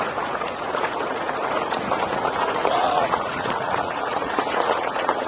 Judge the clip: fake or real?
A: fake